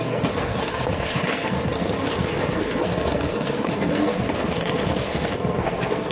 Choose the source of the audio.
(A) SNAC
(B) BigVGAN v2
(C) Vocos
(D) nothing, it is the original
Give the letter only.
A